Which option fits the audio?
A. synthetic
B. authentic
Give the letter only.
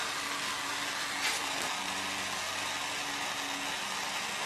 B